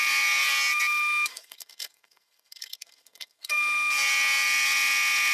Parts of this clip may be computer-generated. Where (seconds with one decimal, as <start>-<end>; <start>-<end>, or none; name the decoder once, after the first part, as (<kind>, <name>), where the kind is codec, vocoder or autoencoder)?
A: 1.3-3.6 (codec, SNAC)

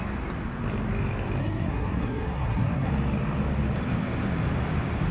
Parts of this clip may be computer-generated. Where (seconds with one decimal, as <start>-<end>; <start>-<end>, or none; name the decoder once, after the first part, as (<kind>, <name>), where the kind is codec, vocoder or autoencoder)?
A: 1.4-2.9 (codec, SNAC)

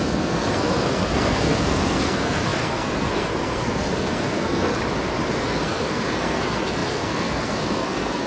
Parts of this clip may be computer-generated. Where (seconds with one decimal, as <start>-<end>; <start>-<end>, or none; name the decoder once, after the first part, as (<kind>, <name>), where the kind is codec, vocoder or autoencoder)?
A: 0.0-4.7 (codec, SNAC); 5.4-8.3

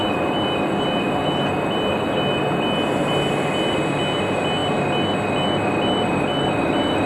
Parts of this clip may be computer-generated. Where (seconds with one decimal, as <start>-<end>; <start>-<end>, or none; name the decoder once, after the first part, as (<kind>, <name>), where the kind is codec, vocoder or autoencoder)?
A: none

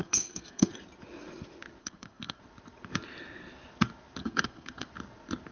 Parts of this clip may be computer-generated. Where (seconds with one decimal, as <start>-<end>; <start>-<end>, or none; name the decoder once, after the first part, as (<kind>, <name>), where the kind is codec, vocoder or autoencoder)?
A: 0.0-0.7 (codec, SNAC); 1.8-2.4; 4.2-4.9

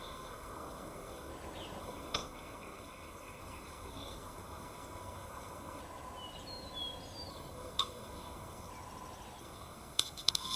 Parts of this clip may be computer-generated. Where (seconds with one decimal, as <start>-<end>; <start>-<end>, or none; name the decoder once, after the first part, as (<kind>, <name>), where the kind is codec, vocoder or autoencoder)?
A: 0.0-1.3 (codec, SNAC); 1.8-5.8; 7.3-8.7; 9.4-10.6